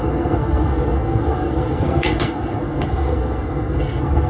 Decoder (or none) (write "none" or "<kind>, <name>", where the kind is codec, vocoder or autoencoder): codec, SNAC